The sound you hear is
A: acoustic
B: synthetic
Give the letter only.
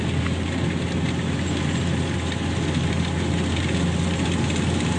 A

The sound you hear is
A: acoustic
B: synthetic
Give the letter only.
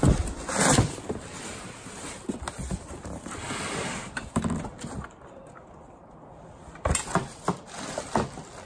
A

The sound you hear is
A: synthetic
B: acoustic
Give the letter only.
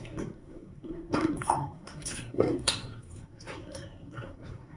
A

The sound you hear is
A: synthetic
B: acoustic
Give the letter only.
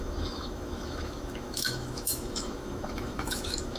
A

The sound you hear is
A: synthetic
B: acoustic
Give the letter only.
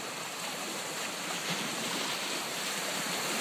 A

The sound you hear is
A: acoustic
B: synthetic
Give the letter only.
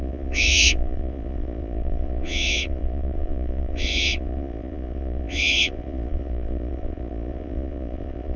B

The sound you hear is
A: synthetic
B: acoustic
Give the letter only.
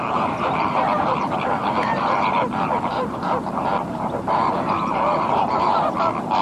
A